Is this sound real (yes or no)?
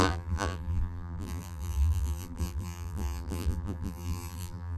no